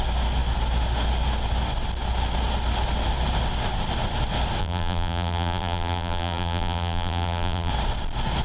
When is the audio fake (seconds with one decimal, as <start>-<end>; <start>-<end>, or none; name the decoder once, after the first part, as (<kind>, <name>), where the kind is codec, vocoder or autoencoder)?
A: 4.6-7.7 (vocoder, BigVGAN v2)